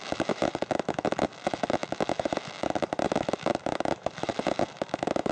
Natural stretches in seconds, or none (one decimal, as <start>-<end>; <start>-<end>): none